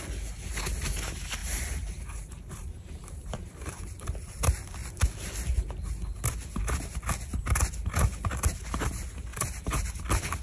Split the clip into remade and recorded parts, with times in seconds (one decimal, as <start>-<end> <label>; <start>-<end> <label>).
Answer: 0.0-1.4 recorded; 1.4-3.8 remade; 3.8-9.3 recorded; 9.3-10.0 remade; 10.0-10.4 recorded